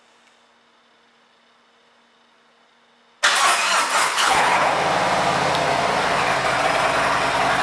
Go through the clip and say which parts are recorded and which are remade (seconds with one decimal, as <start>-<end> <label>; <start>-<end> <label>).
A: 0.0-4.0 recorded; 4.0-4.7 remade; 4.7-7.6 recorded